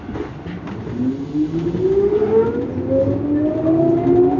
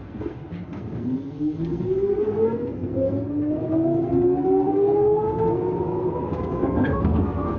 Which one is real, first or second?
first